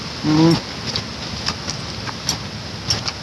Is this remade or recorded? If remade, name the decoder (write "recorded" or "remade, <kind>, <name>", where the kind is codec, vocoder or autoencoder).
recorded